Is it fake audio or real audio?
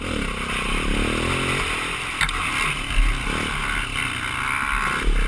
real